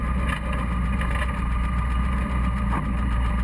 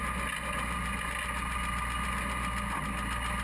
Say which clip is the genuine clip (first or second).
second